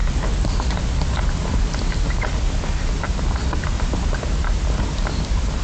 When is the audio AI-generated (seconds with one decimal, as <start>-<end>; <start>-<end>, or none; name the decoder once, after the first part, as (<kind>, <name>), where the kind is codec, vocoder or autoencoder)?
0.0-0.6 (vocoder, BigVGAN v2)